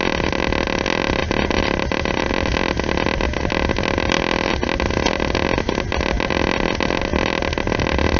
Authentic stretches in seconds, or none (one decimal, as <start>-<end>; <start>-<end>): 0.0-8.2